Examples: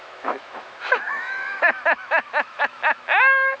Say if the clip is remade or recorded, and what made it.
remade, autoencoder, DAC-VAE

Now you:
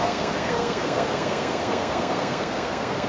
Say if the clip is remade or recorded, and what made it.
remade, codec, SNAC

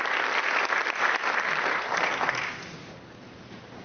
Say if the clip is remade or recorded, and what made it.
recorded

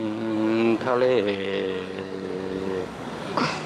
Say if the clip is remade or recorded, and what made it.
remade, codec, DAC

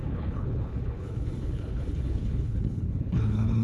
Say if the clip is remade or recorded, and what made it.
remade, codec, HILCodec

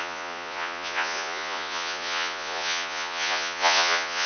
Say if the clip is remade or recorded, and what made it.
remade, vocoder, Vocos